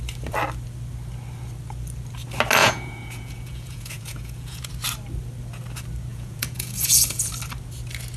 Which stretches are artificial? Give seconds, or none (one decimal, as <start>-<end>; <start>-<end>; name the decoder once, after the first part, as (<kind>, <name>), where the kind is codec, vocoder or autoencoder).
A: 2.6-4.7 (vocoder, Vocos); 6.1-7.3